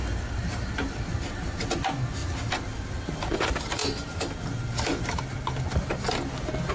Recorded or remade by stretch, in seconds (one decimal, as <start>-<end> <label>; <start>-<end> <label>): 0.0-1.0 remade; 1.0-6.7 recorded